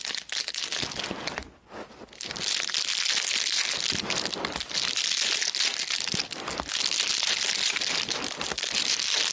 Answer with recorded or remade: recorded